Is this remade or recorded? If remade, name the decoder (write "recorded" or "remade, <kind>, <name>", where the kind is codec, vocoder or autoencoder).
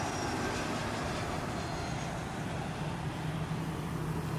recorded